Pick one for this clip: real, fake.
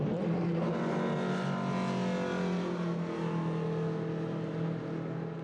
real